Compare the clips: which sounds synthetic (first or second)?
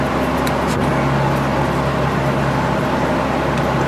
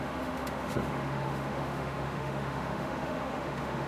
second